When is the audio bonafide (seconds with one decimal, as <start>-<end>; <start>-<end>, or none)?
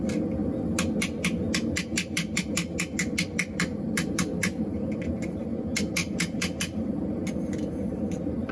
0.0-1.9; 2.5-3.7; 5.4-6.0